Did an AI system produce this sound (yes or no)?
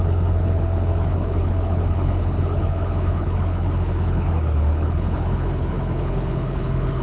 yes